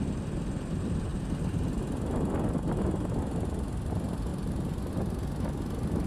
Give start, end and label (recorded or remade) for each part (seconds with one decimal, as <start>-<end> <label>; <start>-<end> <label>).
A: 0.0-6.1 recorded